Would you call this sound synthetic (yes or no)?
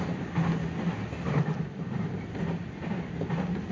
no